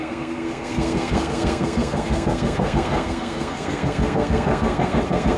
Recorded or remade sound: remade